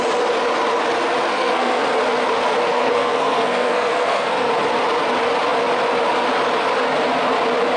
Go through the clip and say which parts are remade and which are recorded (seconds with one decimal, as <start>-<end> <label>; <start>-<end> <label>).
0.0-1.3 recorded; 1.3-1.8 remade; 1.8-2.7 recorded; 2.7-4.5 remade; 4.5-7.8 recorded